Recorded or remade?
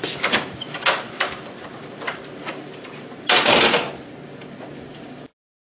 remade